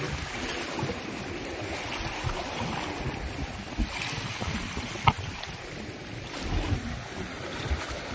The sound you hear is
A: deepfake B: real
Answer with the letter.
B